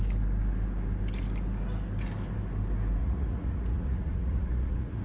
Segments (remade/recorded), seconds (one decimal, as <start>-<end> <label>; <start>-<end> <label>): 0.0-3.0 recorded; 3.0-5.0 remade